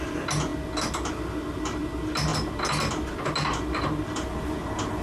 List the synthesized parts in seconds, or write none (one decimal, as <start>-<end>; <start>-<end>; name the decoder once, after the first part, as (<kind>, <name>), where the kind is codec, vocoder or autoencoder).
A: none